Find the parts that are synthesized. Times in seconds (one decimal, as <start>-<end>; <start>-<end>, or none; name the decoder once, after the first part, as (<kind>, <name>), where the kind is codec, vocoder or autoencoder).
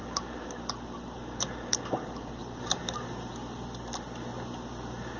2.4-3.3 (vocoder, BigVGAN v2)